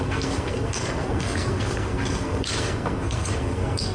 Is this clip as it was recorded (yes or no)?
no